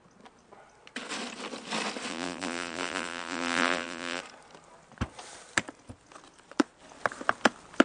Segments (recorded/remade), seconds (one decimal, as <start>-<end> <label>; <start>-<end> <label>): 0.0-2.1 recorded; 2.1-4.2 remade; 4.2-7.8 recorded